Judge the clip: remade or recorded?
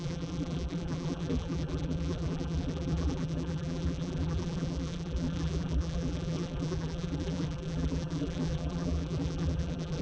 remade